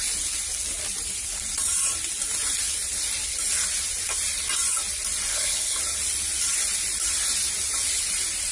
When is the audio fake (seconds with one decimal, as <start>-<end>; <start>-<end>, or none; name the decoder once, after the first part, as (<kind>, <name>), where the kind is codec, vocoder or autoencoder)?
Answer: 5.3-5.8 (codec, HILCodec)